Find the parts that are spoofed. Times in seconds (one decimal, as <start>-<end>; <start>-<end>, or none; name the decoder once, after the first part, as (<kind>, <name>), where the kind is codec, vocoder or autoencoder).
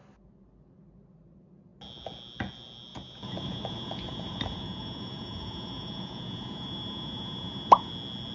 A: 2.9-7.9 (vocoder, Vocos)